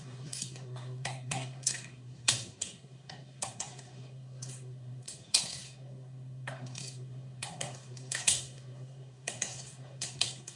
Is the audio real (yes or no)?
no